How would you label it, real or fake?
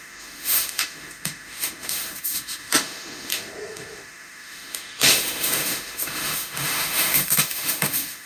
fake